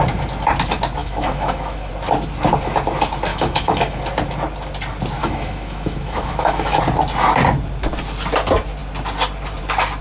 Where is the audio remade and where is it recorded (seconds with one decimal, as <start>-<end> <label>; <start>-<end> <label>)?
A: 0.0-1.0 recorded; 1.0-1.9 remade; 1.9-3.3 recorded; 3.3-4.0 remade; 4.0-5.2 recorded; 5.2-6.8 remade; 6.8-10.0 recorded